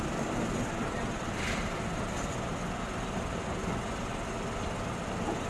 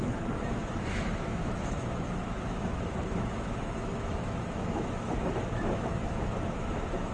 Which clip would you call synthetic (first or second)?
second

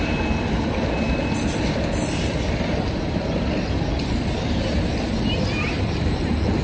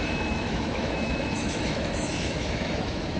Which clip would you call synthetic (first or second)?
second